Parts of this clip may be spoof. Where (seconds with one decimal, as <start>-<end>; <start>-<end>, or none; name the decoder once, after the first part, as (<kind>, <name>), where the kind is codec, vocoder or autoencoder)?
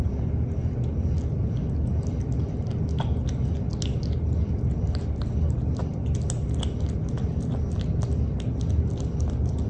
none